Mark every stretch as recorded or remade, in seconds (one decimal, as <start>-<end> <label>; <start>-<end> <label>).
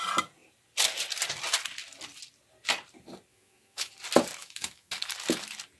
0.0-3.3 recorded; 3.3-3.9 remade; 3.9-4.4 recorded; 4.4-4.9 remade; 4.9-5.8 recorded